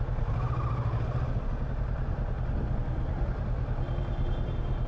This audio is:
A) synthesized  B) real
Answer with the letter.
B